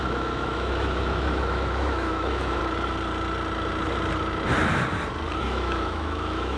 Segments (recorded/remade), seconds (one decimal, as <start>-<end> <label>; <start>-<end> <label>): 0.0-2.6 remade; 2.6-5.4 recorded; 5.4-6.6 remade